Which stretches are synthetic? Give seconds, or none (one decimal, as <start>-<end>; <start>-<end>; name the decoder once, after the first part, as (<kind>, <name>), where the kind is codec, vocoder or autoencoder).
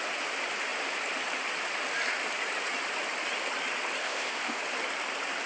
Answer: 4.0-4.6 (codec, ZipCodec)